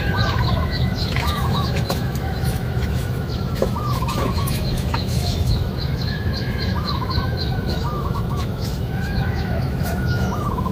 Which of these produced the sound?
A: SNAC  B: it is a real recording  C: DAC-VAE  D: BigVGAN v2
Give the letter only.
C